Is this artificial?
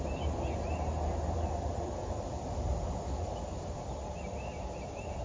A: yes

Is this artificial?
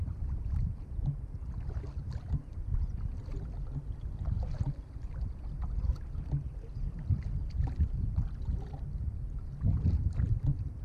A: no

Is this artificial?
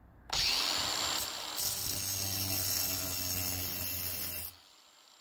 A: no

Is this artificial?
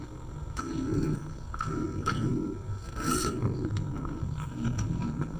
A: yes